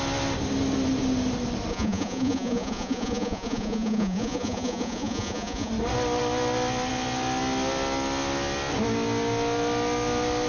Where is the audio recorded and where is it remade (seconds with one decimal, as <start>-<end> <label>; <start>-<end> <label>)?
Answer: 0.0-1.7 recorded; 1.7-5.7 remade; 5.7-10.5 recorded